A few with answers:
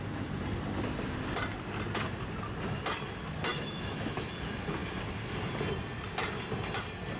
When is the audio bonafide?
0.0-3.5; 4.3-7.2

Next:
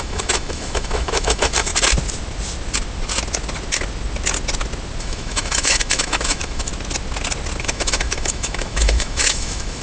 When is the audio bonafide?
1.7-5.0; 6.7-7.6

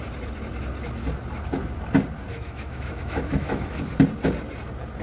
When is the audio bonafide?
0.0-2.3; 3.8-5.0

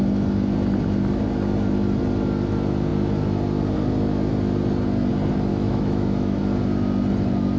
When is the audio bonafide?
0.0-5.5; 6.4-7.6

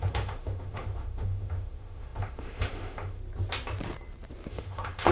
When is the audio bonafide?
3.2-4.5

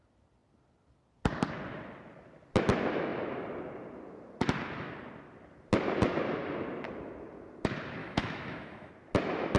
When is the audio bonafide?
0.0-8.0; 8.9-9.6

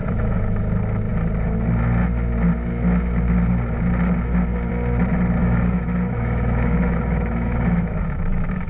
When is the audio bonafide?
0.6-5.4

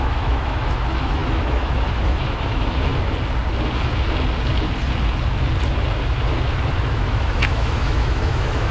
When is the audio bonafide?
2.9-6.8